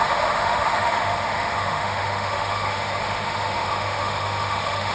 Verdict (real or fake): fake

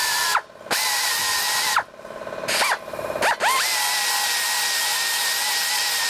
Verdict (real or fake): real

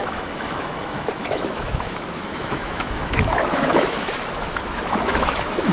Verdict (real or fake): fake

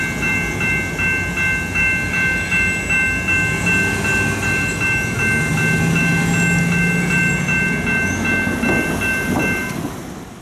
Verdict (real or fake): real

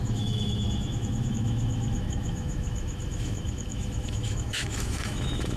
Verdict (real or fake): fake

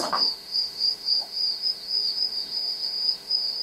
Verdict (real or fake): fake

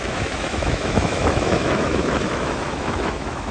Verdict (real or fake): fake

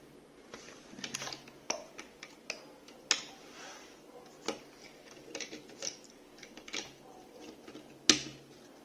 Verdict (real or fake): real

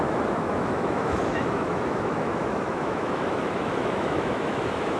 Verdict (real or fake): fake